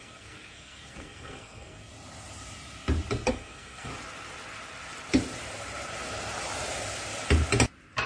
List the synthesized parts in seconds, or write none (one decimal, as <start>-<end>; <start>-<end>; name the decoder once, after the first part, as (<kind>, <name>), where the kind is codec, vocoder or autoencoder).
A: 0.0-1.9 (codec, SNAC); 3.3-3.9